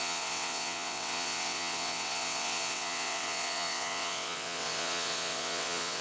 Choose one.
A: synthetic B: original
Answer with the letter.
A